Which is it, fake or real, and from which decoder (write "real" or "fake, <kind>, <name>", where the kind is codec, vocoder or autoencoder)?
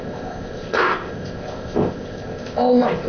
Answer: fake, codec, ZipCodec